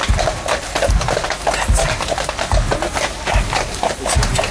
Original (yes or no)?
yes